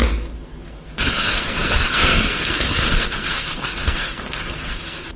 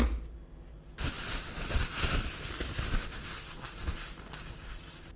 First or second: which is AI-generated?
first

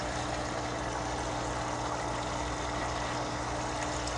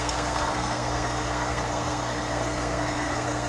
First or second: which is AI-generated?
second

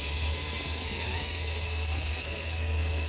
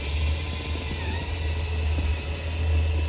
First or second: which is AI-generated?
first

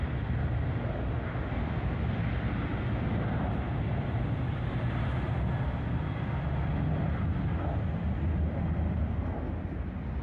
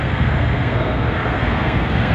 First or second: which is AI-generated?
second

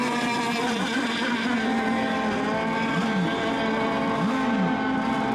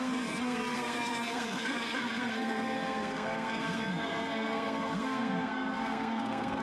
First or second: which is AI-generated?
second